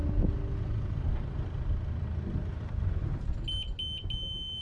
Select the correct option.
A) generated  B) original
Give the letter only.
B